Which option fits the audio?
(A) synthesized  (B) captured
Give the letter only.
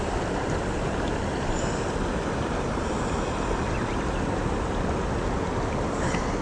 B